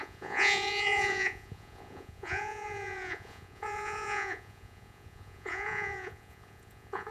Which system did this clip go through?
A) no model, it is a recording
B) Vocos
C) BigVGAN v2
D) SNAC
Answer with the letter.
B